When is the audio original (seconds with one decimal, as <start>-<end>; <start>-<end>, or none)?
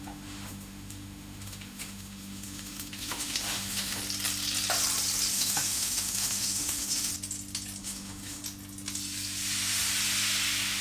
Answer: 4.0-5.3; 7.1-7.8; 8.4-10.8